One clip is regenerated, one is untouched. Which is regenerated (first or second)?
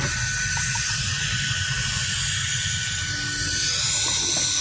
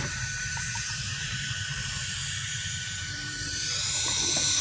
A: second